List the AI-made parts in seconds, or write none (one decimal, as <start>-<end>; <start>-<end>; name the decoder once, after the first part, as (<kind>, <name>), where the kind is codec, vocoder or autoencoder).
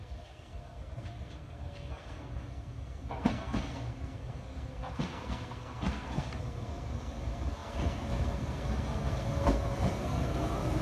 0.0-10.8 (codec, SNAC)